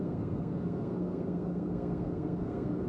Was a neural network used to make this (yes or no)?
yes